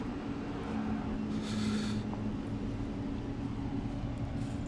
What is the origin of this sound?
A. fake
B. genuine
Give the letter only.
B